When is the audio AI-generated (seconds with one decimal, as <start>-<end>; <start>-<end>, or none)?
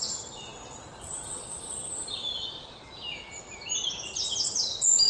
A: none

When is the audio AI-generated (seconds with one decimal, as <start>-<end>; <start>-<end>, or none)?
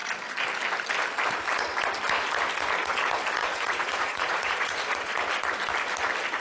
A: 3.4-5.1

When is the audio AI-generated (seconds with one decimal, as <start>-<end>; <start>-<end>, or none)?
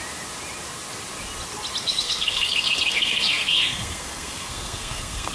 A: 1.8-5.3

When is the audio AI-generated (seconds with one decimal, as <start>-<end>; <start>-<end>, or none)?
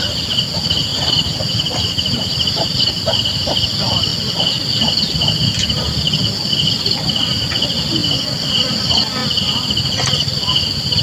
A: 0.9-3.5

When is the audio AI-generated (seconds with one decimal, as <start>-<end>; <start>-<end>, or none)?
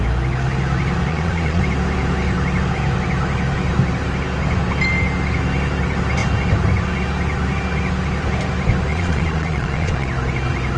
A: 1.1-1.6; 8.9-10.1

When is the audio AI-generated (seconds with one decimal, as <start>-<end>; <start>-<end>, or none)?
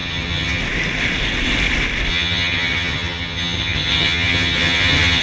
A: 0.0-0.6; 2.1-5.2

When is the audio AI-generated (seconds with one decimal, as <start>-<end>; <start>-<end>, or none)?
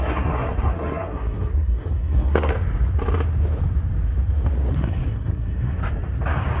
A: 0.0-2.5; 4.7-5.8